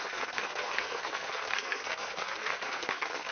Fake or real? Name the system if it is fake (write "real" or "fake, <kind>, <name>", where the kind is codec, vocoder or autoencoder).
fake, codec, SNAC